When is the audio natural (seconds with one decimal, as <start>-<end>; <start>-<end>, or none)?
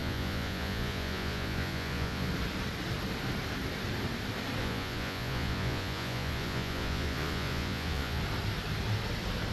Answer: 2.3-4.6; 8.2-9.5